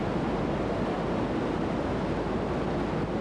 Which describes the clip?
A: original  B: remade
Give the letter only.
A